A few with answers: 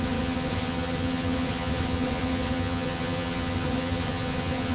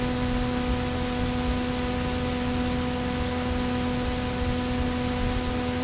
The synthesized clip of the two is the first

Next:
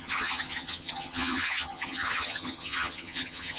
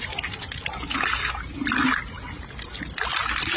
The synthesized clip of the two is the first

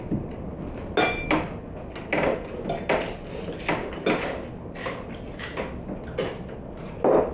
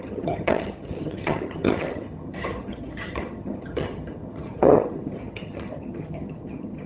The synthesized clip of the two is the second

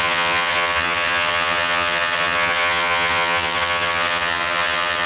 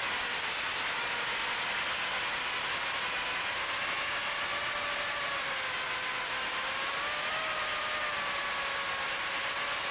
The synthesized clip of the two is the first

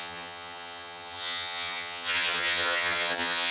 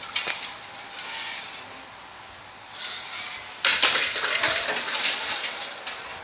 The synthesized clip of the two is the first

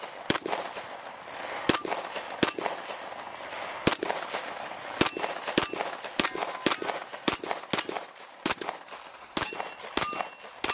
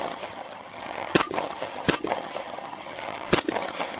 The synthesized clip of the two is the second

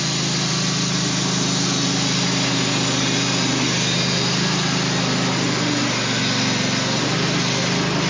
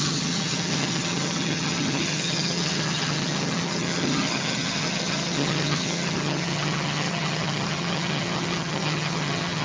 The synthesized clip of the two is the second